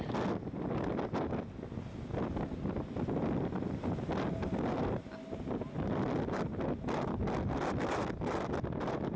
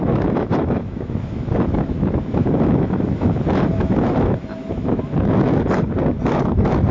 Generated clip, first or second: second